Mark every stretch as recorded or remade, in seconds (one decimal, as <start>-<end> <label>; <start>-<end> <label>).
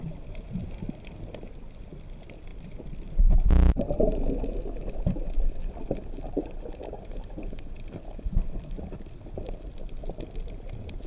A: 0.0-11.1 recorded